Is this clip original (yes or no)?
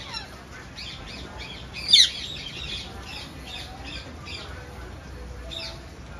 yes